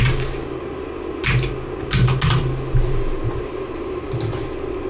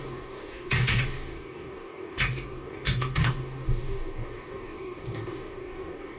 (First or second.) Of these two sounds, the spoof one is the second